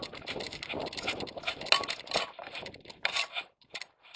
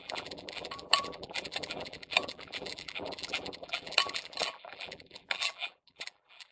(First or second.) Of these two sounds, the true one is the first